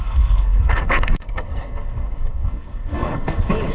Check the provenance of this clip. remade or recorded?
remade